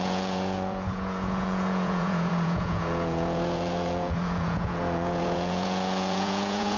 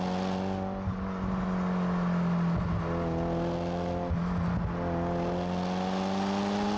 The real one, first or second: second